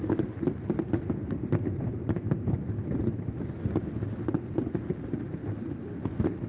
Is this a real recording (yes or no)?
yes